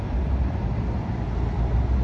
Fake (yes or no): no